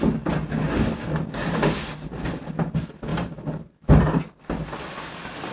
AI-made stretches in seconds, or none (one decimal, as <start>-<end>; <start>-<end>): 3.1-4.2